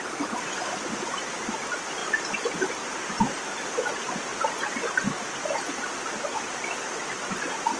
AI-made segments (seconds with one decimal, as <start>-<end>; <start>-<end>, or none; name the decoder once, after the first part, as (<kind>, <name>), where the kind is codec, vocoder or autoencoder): none